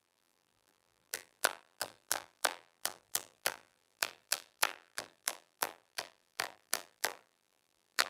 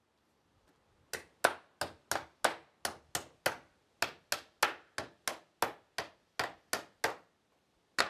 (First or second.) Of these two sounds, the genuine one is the second